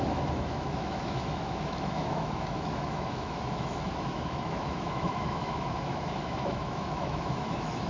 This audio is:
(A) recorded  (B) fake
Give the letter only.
B